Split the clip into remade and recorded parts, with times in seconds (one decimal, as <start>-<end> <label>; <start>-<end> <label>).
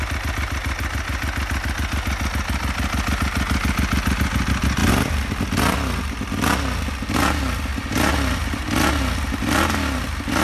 0.0-10.4 recorded